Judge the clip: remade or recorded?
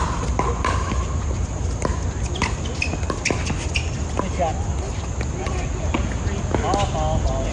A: recorded